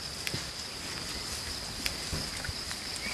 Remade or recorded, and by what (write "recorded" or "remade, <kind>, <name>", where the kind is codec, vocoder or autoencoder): recorded